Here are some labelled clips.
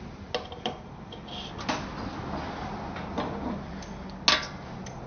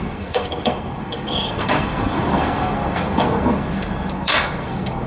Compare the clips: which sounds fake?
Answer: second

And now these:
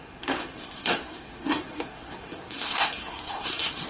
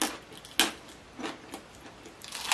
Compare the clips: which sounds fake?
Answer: first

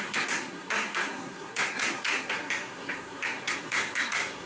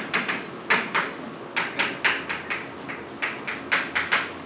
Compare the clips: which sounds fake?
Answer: first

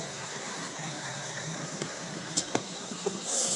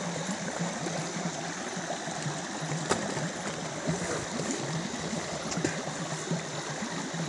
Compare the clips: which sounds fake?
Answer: first